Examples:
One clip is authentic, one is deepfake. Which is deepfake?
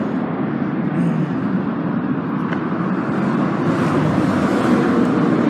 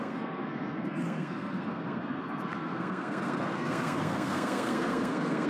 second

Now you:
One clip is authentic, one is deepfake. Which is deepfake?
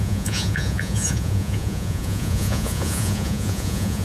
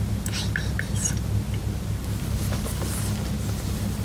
first